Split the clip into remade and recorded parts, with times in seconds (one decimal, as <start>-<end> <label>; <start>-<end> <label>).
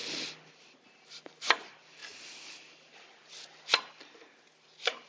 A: 0.0-5.1 recorded